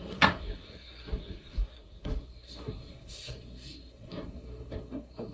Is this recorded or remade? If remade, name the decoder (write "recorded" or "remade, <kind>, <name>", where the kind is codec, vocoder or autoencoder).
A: remade, codec, SNAC